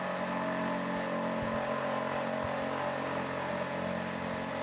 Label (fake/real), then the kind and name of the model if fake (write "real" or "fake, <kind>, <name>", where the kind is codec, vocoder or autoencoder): real